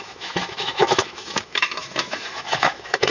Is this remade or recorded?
remade